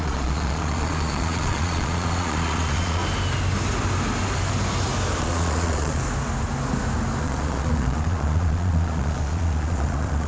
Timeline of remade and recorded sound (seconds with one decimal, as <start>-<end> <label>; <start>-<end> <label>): 0.0-3.0 remade; 3.0-5.2 recorded; 5.2-6.0 remade; 6.0-7.2 recorded; 7.2-10.3 remade